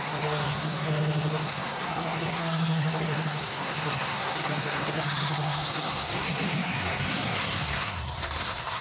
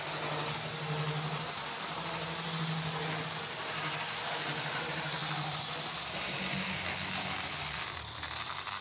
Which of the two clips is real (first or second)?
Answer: second